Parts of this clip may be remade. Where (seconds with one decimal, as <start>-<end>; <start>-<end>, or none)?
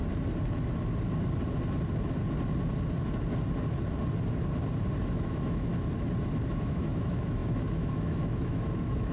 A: 5.1-5.7; 6.5-9.1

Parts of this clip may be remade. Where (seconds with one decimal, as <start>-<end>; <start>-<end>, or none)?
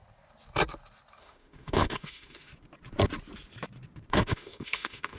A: 1.2-2.5; 4.1-5.2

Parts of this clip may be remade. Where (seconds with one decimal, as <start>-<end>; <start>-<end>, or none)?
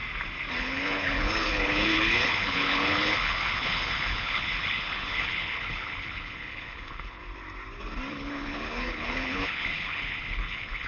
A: 0.6-7.2; 8.1-10.9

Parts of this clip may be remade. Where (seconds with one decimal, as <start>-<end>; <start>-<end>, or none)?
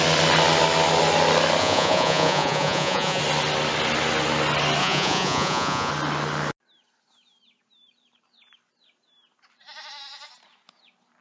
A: 1.6-3.2; 4.8-5.9